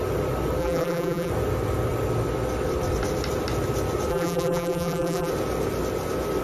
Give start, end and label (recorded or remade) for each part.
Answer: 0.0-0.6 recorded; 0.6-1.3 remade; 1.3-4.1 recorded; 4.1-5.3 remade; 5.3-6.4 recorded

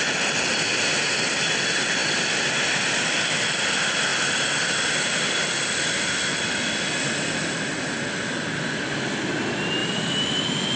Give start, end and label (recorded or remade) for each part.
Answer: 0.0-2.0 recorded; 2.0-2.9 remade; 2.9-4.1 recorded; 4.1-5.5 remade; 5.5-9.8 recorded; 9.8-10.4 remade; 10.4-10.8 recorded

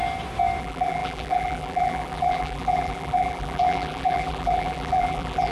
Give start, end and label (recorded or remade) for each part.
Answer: 0.0-0.6 recorded; 0.6-5.5 remade